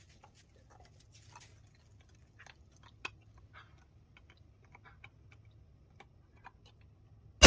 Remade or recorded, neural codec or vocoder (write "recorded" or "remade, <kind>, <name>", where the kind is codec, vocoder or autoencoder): recorded